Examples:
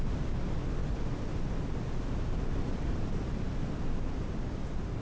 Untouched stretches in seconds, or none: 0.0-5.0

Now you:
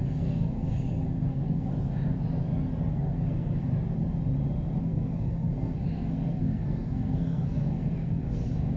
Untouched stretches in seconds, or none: 1.7-2.9; 3.7-4.8

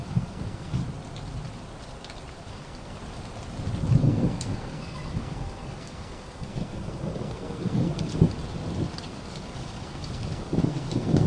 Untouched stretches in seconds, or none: 0.8-2.5; 3.0-4.0; 8.3-9.0

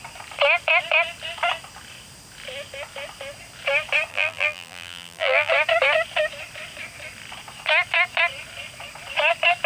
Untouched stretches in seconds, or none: 0.0-4.1; 5.5-9.7

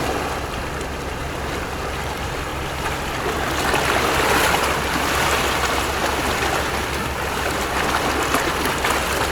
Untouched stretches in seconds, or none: 0.0-9.3

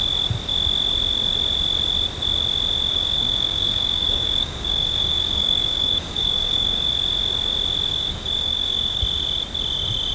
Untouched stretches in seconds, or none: 0.0-2.9; 6.9-7.9; 9.0-10.1